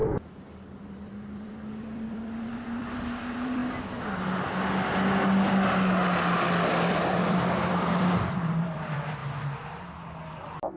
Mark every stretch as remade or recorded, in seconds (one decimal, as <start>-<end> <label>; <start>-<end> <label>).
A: 0.0-3.6 remade; 3.6-6.7 recorded; 6.7-9.2 remade; 9.2-10.2 recorded; 10.2-10.8 remade

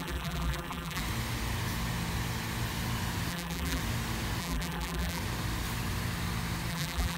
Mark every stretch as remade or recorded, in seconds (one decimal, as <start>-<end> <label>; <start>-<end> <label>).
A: 0.0-1.0 remade; 1.0-3.3 recorded; 3.3-3.8 remade; 3.8-4.4 recorded; 4.4-5.2 remade; 5.2-6.7 recorded; 6.7-7.2 remade

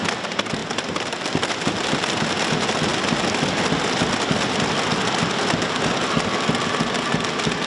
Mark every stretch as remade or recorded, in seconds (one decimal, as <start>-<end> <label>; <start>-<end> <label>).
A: 0.0-0.6 recorded; 0.6-1.9 remade; 1.9-2.9 recorded; 2.9-5.3 remade; 5.3-7.7 recorded

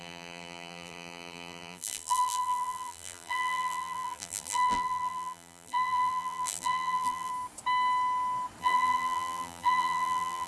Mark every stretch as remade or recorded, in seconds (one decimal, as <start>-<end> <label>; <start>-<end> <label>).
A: 0.0-7.3 remade; 7.3-8.6 recorded; 8.6-10.5 remade

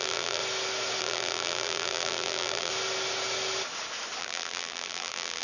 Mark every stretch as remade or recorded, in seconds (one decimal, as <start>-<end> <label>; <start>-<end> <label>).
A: 0.0-0.4 remade; 0.4-1.0 recorded; 1.0-2.7 remade; 2.7-4.2 recorded; 4.2-5.4 remade

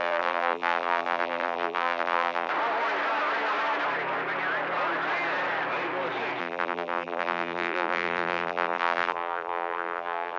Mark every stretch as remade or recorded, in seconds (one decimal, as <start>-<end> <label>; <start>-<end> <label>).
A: 0.0-2.5 remade; 2.5-6.4 recorded; 6.4-10.4 remade

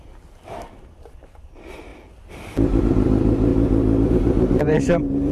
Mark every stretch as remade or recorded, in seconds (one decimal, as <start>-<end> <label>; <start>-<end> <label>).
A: 0.0-1.9 remade; 1.9-2.8 recorded; 2.8-3.5 remade; 3.5-4.1 recorded; 4.1-5.3 remade

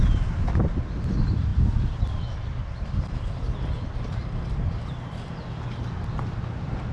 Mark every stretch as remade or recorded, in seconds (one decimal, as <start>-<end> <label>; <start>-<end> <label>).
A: 0.0-1.5 recorded; 1.5-5.3 remade; 5.3-6.9 recorded